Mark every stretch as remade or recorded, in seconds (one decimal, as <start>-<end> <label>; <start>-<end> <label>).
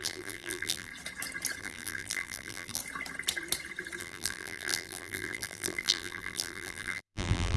0.0-0.9 remade; 0.9-1.6 recorded; 1.6-2.8 remade; 2.8-4.0 recorded; 4.0-7.6 remade